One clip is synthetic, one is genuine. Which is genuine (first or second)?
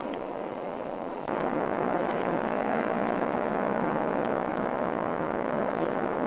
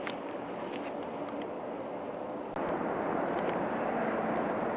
second